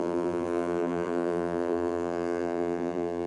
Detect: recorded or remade remade